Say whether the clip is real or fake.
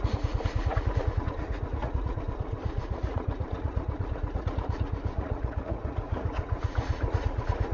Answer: fake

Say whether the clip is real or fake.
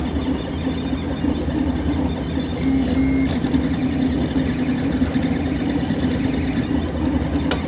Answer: real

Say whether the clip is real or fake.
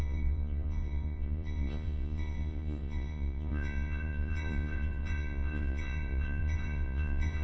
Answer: fake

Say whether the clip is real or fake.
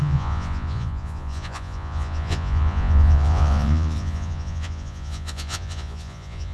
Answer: fake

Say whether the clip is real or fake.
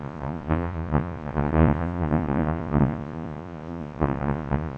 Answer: fake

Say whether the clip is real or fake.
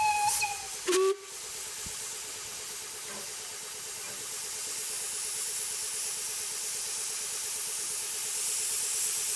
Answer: real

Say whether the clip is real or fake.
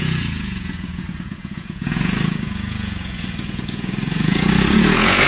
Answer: fake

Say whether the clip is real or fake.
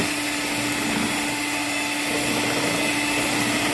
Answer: real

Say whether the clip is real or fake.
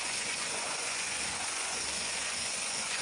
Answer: fake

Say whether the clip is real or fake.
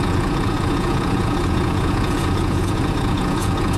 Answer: fake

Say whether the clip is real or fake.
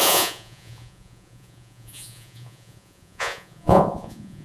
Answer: fake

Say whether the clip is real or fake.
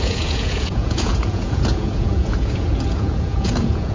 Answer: fake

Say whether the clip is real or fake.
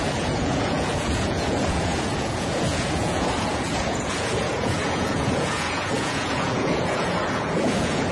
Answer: fake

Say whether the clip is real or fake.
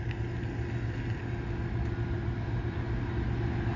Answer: real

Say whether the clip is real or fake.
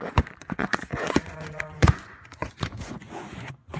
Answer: fake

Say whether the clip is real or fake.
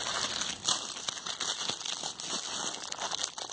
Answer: real